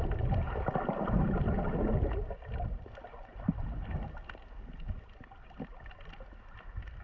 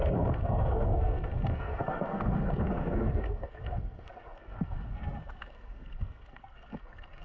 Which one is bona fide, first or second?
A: first